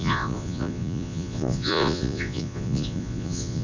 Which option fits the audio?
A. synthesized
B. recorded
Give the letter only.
A